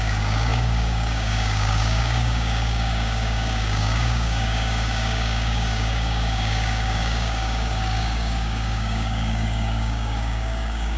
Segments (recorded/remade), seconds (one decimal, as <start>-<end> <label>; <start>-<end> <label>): 0.0-11.0 remade